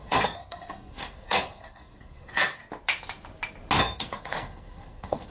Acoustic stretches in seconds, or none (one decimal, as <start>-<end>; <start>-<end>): 2.6-3.8